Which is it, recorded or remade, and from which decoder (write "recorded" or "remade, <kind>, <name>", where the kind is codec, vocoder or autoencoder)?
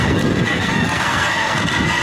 remade, codec, SNAC